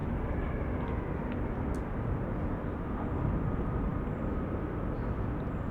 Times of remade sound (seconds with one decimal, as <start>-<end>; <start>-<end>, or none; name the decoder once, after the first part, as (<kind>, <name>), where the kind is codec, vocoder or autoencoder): 0.0-0.7 (vocoder, BigVGAN v2)